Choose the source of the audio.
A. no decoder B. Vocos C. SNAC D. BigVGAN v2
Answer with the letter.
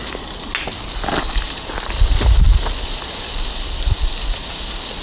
A